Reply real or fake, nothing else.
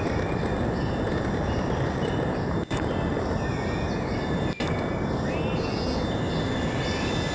real